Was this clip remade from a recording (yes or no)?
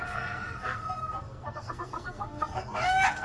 yes